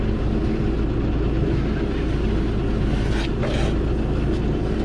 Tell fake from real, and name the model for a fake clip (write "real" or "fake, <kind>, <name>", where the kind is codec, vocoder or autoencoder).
real